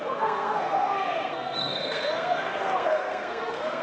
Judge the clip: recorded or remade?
remade